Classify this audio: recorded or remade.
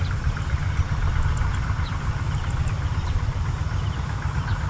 recorded